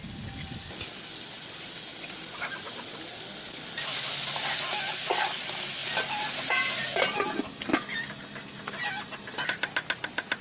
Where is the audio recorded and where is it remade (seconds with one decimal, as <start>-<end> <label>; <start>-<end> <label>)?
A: 0.0-1.9 recorded; 1.9-3.1 remade; 3.1-5.8 recorded; 5.8-7.0 remade; 7.0-10.4 recorded